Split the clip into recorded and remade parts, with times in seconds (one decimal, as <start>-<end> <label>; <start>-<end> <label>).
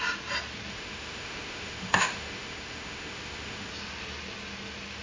0.0-0.7 recorded; 0.7-3.7 remade; 3.7-5.0 recorded